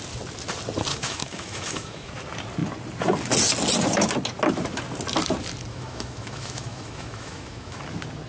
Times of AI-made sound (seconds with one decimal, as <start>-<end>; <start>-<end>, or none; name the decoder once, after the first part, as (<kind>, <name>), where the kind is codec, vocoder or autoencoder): 0.9-2.1 (autoencoder, DAC-VAE); 5.7-7.8